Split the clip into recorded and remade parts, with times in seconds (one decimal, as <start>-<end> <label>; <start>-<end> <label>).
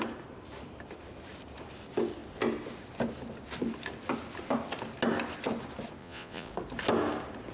0.0-6.0 recorded; 6.0-6.5 remade; 6.5-7.5 recorded